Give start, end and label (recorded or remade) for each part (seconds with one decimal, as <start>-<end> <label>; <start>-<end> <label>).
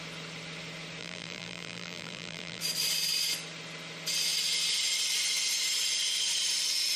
0.0-1.0 recorded; 1.0-2.6 remade; 2.6-7.0 recorded